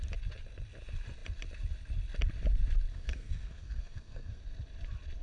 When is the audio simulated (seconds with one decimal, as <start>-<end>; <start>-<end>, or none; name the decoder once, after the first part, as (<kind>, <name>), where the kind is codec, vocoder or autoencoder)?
2.9-4.4 (codec, SNAC)

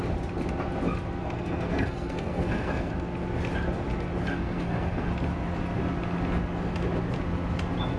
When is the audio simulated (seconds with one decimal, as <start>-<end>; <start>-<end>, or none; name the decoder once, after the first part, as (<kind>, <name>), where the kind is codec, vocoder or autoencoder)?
1.2-2.9 (codec, SNAC); 4.3-5.1